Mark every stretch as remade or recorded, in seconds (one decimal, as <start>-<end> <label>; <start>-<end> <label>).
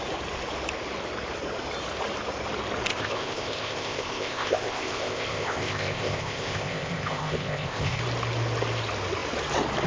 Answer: 0.0-2.9 recorded; 2.9-8.0 remade; 8.0-9.9 recorded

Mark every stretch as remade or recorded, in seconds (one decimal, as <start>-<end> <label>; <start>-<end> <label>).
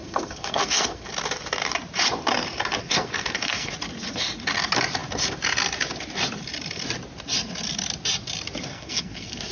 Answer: 0.0-1.1 remade; 1.1-2.8 recorded; 2.8-3.7 remade; 3.7-8.7 recorded; 8.7-9.5 remade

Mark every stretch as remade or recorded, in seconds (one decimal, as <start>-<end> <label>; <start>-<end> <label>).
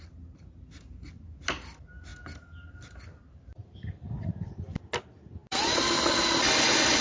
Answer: 0.0-7.0 recorded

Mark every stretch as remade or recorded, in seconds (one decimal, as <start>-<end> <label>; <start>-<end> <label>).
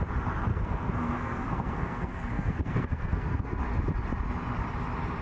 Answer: 0.0-0.5 recorded; 0.5-3.6 remade; 3.6-5.2 recorded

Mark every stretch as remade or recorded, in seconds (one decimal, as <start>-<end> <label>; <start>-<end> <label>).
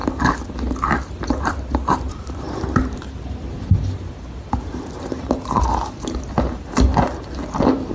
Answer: 0.0-1.3 recorded; 1.3-5.7 remade; 5.7-6.4 recorded; 6.4-6.9 remade; 6.9-7.5 recorded; 7.5-7.9 remade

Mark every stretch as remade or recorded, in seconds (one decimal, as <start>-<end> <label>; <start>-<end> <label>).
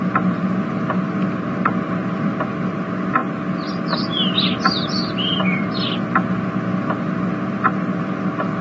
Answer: 0.0-8.6 recorded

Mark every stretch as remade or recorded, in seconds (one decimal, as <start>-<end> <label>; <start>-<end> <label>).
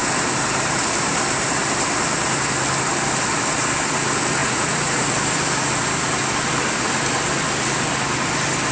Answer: 0.0-4.4 recorded; 4.4-5.1 remade; 5.1-8.7 recorded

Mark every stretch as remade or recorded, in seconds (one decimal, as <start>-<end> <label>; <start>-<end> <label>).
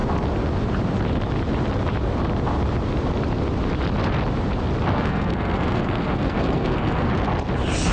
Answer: 0.0-4.9 recorded; 4.9-7.1 remade; 7.1-7.9 recorded